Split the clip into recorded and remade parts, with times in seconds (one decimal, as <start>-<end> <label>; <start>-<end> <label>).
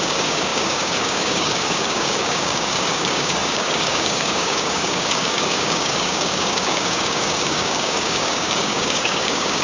0.0-9.6 remade